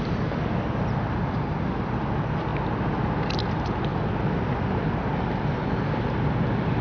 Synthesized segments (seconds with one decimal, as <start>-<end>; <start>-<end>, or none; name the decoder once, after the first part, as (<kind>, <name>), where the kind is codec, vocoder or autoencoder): 0.0-2.5 (vocoder, BigVGAN v2); 3.3-3.9; 5.4-6.8